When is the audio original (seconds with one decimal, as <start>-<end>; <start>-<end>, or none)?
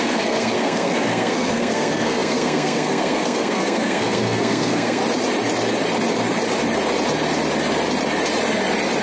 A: 5.0-9.0